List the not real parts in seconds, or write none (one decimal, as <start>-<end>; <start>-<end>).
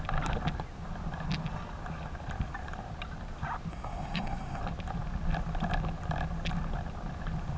3.7-4.6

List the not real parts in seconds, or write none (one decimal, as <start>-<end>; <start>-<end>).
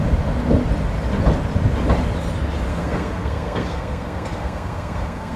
2.7-5.4